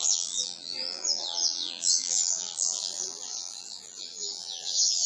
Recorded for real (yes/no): no